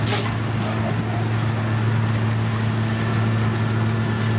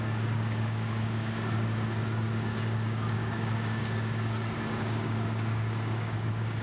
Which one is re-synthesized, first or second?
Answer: second